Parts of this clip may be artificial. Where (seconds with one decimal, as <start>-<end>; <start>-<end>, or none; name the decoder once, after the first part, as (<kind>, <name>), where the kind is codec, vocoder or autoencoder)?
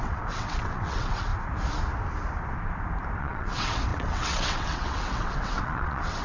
0.0-1.3 (vocoder, WaveNeXt); 3.2-6.2